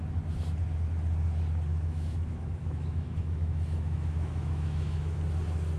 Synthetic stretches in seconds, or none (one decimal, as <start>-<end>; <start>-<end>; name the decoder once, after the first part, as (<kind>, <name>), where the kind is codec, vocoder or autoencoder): 1.7-5.2 (autoencoder, DAC-VAE)